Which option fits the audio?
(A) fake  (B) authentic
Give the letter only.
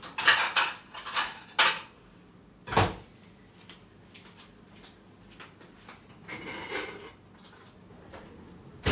B